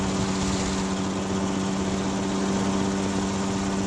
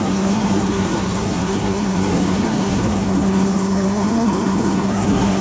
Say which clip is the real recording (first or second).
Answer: first